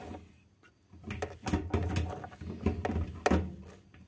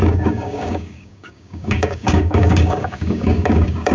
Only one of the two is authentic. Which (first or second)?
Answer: first